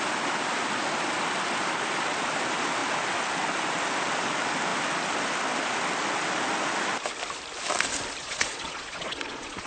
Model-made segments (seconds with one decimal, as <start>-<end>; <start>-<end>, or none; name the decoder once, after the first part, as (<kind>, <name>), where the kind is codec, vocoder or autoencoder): 8.2-9.7 (vocoder, Vocos)